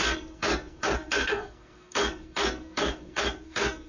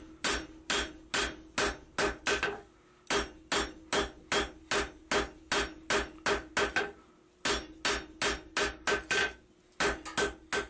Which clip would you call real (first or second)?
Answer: second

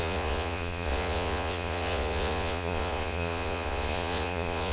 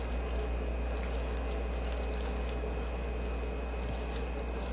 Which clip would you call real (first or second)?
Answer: second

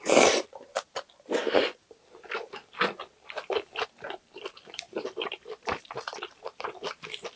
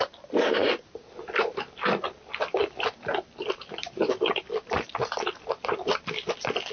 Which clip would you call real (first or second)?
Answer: second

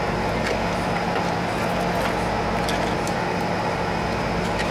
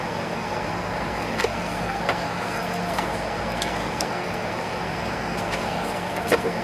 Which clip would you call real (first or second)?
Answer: first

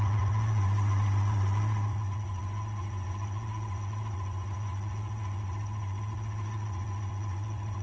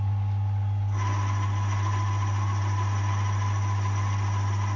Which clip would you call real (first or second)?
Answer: second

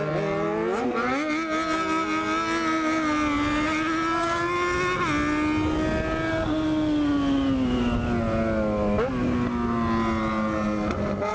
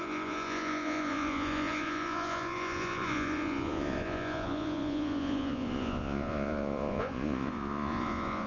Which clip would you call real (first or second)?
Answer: first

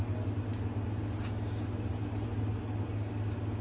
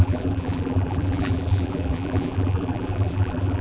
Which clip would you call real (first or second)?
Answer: first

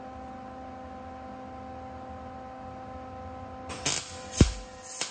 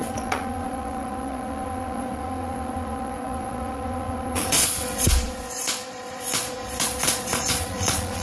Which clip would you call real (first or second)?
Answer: first